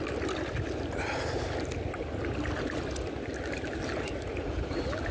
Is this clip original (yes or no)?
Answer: yes